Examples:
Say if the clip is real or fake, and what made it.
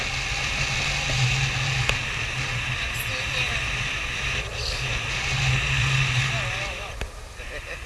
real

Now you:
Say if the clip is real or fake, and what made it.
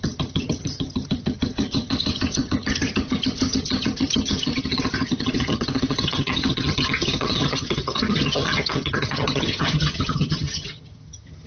fake, vocoder, HiFi-GAN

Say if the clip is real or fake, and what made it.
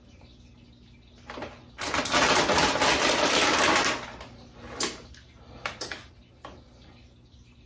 real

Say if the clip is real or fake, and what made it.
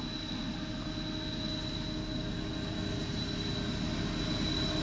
real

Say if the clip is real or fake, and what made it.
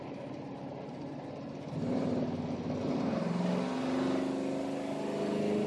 real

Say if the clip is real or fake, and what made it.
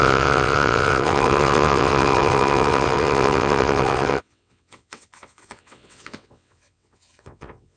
fake, vocoder, WaveNeXt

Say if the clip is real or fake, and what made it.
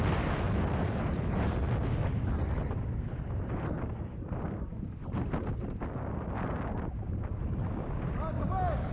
real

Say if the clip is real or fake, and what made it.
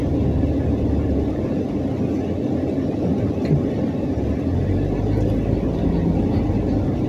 real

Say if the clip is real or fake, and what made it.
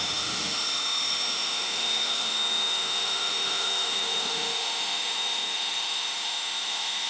fake, autoencoder, DAC-VAE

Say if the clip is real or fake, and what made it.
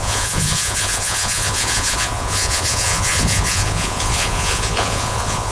fake, vocoder, Vocos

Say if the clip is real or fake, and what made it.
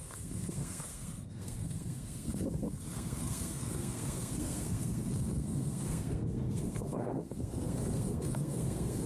fake, codec, SNAC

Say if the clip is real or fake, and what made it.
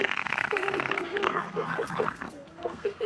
fake, codec, SNAC